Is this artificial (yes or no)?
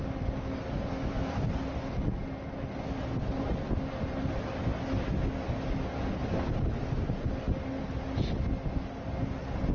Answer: no